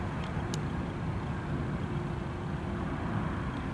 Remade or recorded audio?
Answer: recorded